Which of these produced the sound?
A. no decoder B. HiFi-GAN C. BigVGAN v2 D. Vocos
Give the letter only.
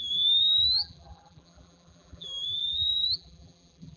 C